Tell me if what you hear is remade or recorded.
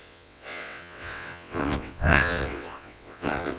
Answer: remade